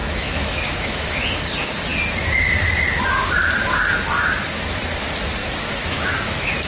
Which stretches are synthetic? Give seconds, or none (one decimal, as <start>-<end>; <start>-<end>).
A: 0.0-1.1; 5.4-6.7